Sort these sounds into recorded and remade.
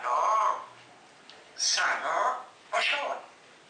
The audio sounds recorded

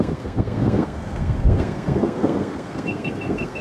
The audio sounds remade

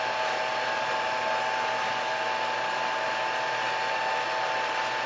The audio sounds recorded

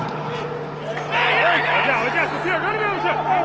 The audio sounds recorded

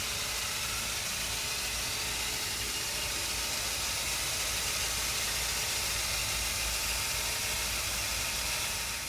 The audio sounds recorded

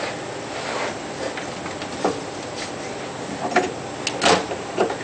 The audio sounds recorded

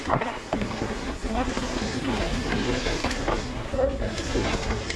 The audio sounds remade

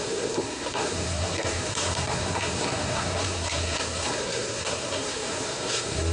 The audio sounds remade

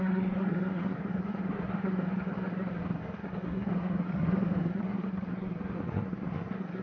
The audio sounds remade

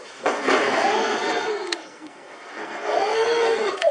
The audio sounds remade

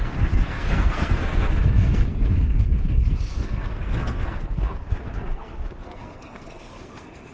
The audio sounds remade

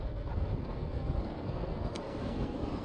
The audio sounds remade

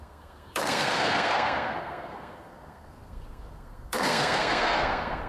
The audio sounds remade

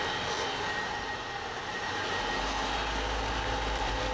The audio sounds recorded